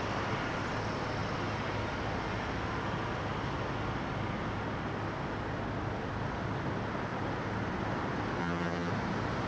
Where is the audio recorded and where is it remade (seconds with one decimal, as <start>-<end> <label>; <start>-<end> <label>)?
0.0-8.4 recorded; 8.4-8.9 remade; 8.9-9.5 recorded